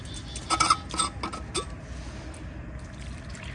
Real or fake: real